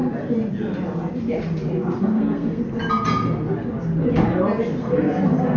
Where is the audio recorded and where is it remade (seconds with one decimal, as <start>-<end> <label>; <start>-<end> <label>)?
0.0-2.0 recorded; 2.0-2.6 remade; 2.6-4.8 recorded; 4.8-5.6 remade